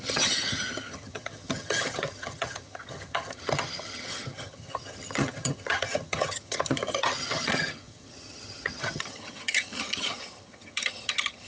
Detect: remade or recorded remade